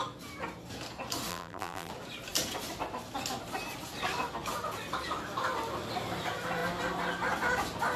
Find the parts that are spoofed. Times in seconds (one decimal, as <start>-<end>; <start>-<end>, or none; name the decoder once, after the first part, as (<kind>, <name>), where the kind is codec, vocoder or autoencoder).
1.3-1.9 (vocoder, BigVGAN v2)